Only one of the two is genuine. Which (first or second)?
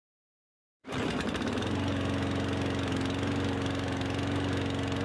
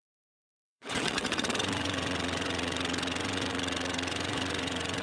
first